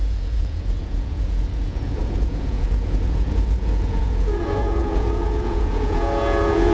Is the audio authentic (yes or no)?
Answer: no